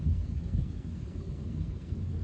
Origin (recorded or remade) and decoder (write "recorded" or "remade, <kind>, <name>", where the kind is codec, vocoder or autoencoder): remade, codec, SNAC